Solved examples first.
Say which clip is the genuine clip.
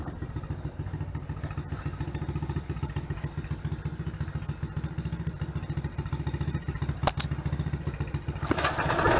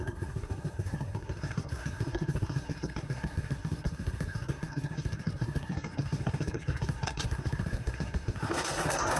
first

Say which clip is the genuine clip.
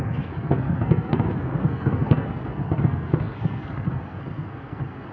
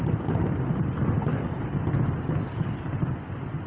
second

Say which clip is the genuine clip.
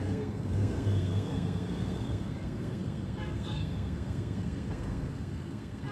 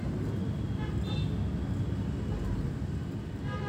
second